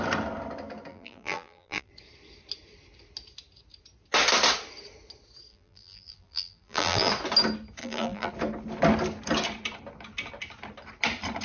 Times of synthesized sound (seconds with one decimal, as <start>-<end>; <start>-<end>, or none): 0.9-1.9; 5.5-7.1; 7.8-8.3